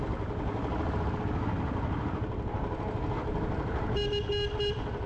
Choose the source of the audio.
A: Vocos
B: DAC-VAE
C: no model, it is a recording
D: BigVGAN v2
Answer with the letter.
C